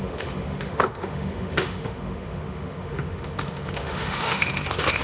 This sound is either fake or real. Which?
fake